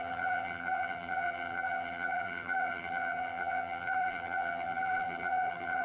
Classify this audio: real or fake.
fake